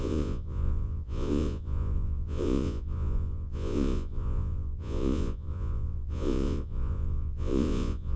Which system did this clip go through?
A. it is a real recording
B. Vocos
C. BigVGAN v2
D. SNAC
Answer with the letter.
B